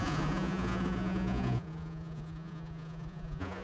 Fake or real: fake